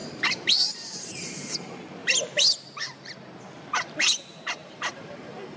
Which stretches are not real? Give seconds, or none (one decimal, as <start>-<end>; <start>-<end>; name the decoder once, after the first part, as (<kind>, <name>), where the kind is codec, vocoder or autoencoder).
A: 0.0-1.5 (vocoder, BigVGAN v2); 4.6-5.6